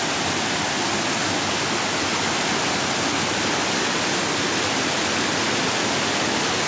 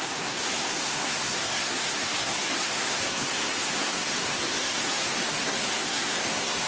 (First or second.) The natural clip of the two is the first